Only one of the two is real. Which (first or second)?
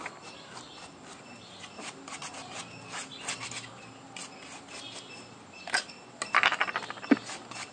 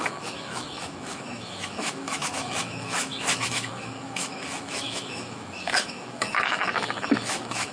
first